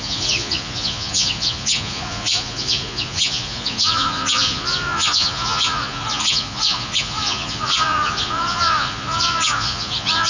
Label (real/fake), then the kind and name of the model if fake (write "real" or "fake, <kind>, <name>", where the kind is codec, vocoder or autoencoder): fake, vocoder, Vocos